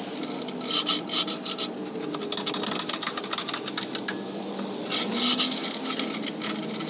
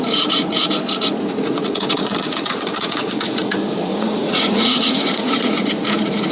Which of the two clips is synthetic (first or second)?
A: second